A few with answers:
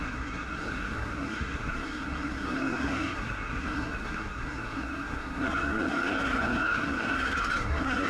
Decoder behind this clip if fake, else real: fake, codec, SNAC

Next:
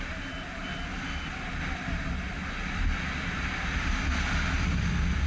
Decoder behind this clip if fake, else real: real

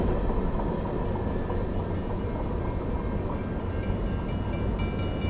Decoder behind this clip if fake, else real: real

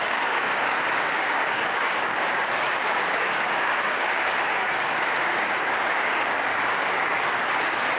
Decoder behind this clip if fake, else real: fake, codec, DAC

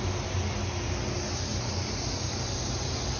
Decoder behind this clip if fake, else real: real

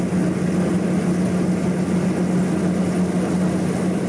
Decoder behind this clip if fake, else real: real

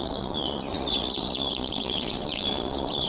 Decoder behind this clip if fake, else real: fake, vocoder, WaveNeXt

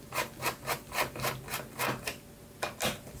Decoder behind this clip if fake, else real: real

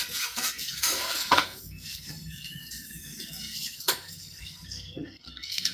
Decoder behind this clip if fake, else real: fake, codec, SNAC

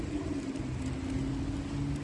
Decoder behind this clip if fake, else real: real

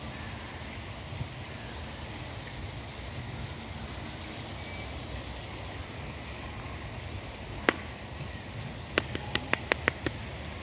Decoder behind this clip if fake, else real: real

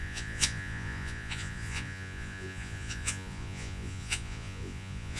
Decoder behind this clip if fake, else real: fake, vocoder, Vocos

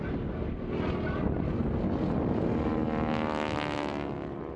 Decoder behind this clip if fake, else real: real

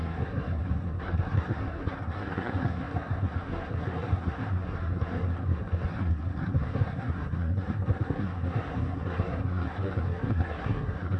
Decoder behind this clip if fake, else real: fake, codec, SNAC